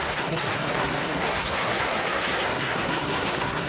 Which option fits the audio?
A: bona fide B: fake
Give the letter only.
B